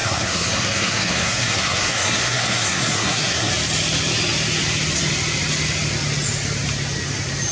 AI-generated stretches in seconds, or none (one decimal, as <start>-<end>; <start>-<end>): 0.0-3.5